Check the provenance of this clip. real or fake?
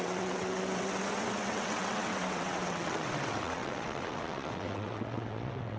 fake